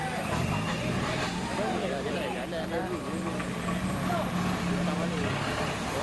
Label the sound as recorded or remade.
recorded